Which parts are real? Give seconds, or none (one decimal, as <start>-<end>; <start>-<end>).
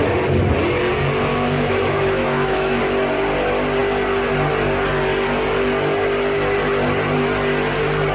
0.0-1.3; 2.8-8.1